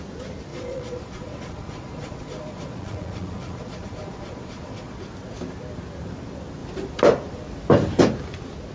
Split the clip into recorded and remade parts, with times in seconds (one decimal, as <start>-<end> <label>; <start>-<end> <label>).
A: 0.0-0.5 recorded; 0.5-5.0 remade; 5.0-8.7 recorded

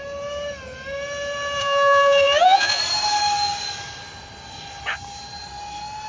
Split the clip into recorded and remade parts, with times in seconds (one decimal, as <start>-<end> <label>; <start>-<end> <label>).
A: 0.0-1.6 recorded; 1.6-2.8 remade; 2.8-6.1 recorded